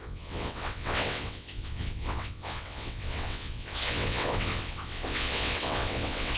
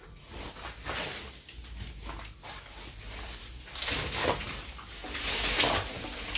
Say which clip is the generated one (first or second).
first